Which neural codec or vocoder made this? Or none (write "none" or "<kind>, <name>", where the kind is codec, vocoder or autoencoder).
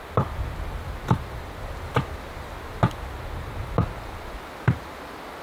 none